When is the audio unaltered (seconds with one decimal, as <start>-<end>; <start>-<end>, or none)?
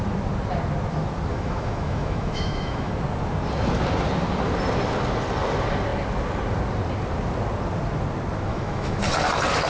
0.0-1.3; 2.9-8.5; 9.0-9.7